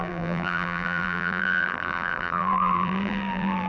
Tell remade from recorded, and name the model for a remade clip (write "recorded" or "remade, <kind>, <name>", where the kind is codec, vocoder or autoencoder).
remade, vocoder, BigVGAN v2